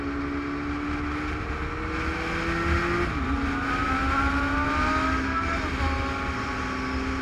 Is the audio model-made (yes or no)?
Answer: no